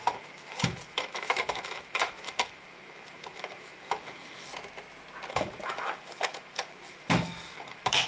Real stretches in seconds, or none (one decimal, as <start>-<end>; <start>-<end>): 4.5-5.3